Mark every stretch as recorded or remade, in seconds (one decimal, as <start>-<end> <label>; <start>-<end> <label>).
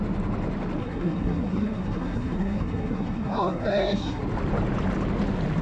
0.0-0.8 recorded; 0.8-4.2 remade; 4.2-5.6 recorded